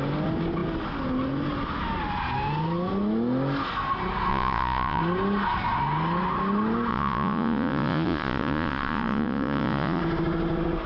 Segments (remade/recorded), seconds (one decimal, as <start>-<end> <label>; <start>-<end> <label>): 0.0-4.3 recorded; 4.3-5.0 remade; 5.0-6.9 recorded; 6.9-10.0 remade; 10.0-10.9 recorded